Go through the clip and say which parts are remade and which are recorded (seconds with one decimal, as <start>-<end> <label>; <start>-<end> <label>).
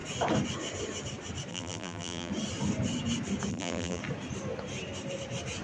0.0-1.5 recorded; 1.5-2.3 remade; 2.3-3.5 recorded; 3.5-4.0 remade; 4.0-5.6 recorded